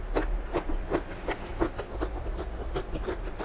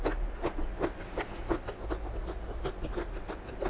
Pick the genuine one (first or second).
second